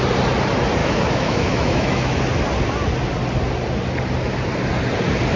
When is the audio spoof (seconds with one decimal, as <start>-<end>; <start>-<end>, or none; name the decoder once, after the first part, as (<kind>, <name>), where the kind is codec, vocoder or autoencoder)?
0.8-2.2 (autoencoder, DAC-VAE)